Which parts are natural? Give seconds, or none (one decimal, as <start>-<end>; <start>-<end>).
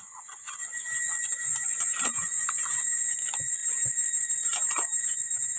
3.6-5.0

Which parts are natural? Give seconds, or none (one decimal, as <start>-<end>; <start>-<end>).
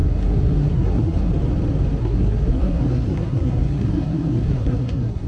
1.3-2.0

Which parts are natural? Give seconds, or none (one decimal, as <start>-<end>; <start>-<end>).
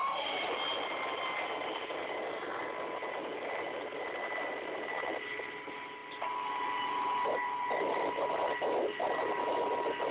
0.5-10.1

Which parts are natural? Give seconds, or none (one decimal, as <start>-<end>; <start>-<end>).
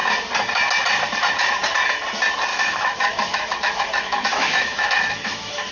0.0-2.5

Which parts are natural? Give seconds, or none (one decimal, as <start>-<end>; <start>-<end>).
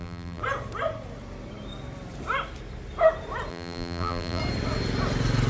0.4-3.5; 4.4-5.5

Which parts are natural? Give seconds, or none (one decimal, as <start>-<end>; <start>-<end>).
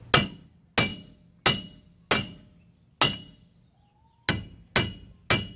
0.0-5.6